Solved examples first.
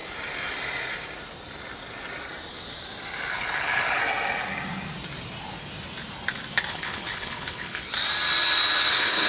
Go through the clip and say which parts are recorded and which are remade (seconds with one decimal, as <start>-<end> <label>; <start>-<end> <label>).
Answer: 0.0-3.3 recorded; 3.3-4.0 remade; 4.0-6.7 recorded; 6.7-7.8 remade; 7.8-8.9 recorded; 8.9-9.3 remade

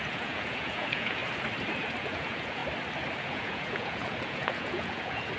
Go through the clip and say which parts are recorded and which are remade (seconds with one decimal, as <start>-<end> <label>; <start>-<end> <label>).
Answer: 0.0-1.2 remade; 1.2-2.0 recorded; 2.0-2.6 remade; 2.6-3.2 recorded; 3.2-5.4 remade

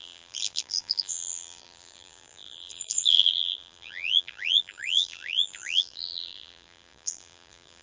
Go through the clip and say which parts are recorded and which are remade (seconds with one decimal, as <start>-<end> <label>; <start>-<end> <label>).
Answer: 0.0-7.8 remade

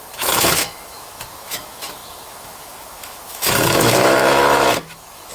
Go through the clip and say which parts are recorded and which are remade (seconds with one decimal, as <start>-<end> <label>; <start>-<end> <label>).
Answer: 0.0-5.3 remade

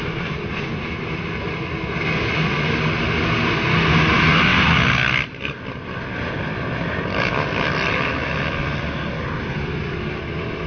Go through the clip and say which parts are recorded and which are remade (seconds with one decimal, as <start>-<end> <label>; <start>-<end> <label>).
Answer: 0.0-10.7 recorded

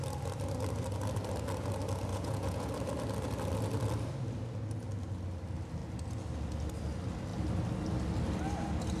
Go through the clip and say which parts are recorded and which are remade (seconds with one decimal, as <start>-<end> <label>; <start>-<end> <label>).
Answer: 0.0-2.1 recorded; 2.1-2.7 remade; 2.7-9.0 recorded

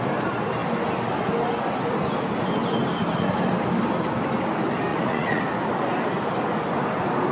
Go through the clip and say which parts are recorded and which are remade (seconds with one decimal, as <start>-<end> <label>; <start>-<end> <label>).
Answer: 0.0-4.9 recorded; 4.9-5.4 remade; 5.4-7.3 recorded